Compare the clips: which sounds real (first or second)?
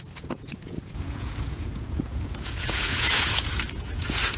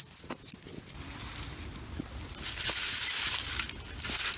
second